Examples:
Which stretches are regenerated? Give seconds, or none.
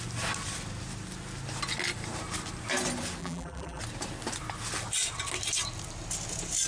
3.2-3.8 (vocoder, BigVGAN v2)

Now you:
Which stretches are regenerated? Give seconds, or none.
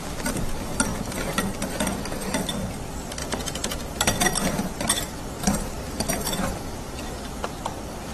0.9-1.7 (vocoder, BigVGAN v2); 3.2-6.1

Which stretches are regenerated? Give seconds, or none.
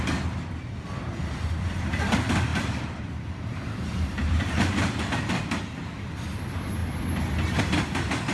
2.5-5.0 (vocoder, BigVGAN v2)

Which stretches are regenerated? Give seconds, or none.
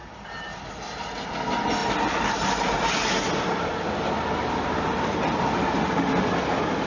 0.0-0.7 (vocoder, BigVGAN v2)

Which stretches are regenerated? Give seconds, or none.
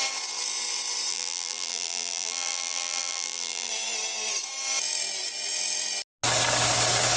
1.1-3.7 (vocoder, BigVGAN v2)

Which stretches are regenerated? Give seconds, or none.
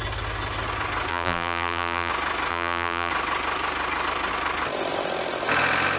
1.1-2.1 (vocoder, BigVGAN v2); 2.5-3.1